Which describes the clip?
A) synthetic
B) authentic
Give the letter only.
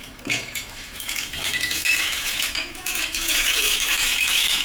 A